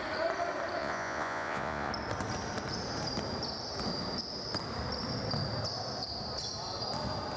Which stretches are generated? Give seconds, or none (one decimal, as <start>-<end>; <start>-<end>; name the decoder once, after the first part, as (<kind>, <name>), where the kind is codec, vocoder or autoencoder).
0.8-1.9 (vocoder, Vocos)